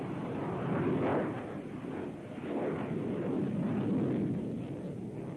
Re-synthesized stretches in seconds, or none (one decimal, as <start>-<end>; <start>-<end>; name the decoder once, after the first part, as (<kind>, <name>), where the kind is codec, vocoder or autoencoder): none